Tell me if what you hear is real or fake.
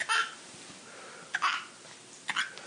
real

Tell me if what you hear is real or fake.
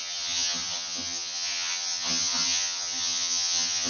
fake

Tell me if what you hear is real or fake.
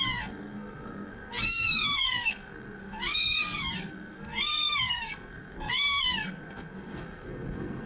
fake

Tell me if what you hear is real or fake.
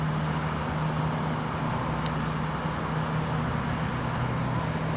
real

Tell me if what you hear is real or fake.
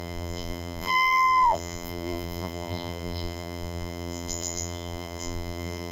fake